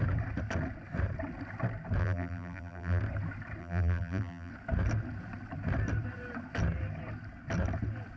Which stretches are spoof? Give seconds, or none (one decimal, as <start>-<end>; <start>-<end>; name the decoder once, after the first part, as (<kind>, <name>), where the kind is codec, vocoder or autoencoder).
2.0-3.0 (vocoder, BigVGAN v2); 3.6-4.5